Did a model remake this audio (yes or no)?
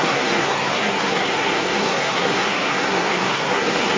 yes